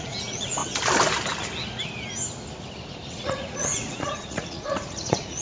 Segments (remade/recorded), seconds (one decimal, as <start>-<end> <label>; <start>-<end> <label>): 0.0-0.6 remade; 0.6-3.1 recorded; 3.1-5.4 remade